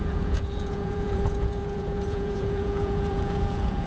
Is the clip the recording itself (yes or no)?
no